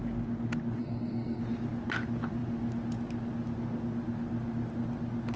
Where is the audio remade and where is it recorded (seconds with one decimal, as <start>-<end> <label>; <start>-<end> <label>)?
0.0-0.8 recorded; 0.8-1.4 remade; 1.4-5.4 recorded